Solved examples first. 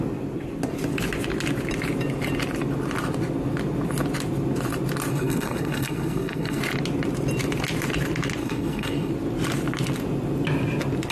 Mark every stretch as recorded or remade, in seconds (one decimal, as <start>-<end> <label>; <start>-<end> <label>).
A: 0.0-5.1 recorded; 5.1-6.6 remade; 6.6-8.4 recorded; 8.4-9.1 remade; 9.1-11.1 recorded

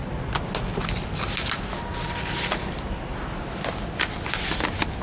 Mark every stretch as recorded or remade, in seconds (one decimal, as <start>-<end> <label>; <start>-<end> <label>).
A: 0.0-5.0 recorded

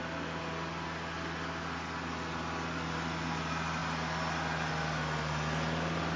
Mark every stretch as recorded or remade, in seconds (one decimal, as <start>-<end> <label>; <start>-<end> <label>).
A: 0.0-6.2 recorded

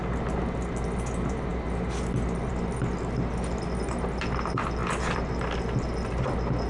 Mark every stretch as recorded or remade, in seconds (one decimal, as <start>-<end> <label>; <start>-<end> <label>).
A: 0.0-6.7 recorded

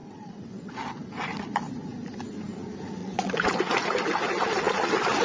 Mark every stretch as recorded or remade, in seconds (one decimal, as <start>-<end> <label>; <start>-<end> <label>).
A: 0.0-0.7 remade; 0.7-3.0 recorded; 3.0-3.5 remade; 3.5-5.2 recorded